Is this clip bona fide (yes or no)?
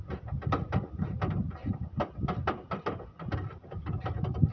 yes